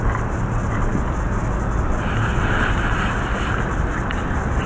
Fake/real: real